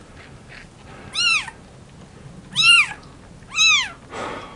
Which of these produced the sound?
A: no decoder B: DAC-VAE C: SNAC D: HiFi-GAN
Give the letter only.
A